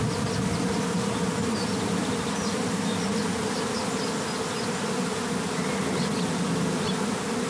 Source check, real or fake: real